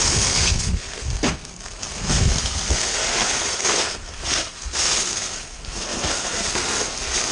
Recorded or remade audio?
remade